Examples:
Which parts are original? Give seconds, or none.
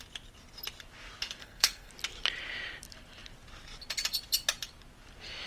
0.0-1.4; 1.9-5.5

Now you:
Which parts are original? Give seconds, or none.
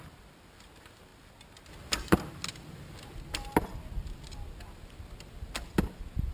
0.0-6.3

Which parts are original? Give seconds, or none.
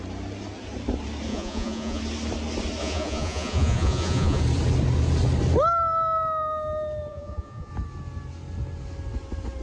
0.0-1.3; 2.0-2.8; 4.4-7.1; 7.7-9.6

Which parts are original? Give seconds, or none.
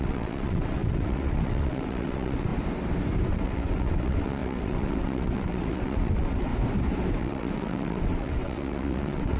2.5-3.3; 6.5-7.1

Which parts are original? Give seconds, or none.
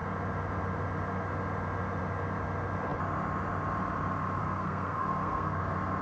0.0-4.4; 5.6-6.0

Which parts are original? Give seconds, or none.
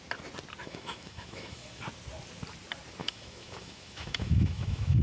0.0-0.6; 1.8-3.0